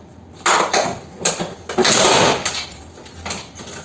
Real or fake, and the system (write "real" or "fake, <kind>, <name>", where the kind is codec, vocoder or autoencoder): real